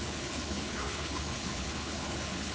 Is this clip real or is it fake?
fake